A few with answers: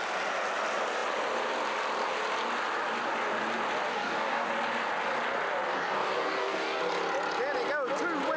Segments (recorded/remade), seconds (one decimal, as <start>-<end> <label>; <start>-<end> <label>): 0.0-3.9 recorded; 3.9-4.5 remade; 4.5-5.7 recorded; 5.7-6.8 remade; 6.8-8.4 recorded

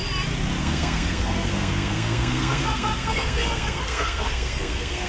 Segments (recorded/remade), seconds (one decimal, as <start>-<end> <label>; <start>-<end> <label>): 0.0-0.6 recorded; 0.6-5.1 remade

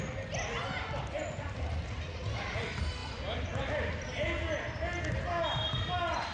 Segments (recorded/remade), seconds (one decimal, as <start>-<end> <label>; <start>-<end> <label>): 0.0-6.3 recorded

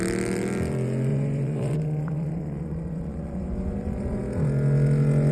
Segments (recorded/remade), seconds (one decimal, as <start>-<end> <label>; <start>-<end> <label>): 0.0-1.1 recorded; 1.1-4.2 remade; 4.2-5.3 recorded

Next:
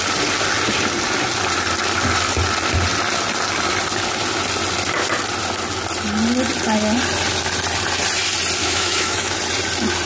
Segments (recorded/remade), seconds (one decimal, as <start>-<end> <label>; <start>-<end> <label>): 0.0-8.6 recorded; 8.6-9.4 remade; 9.4-10.1 recorded